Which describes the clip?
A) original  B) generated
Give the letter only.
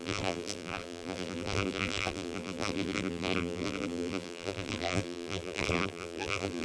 B